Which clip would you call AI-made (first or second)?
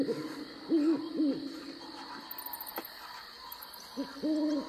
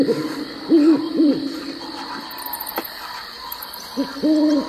second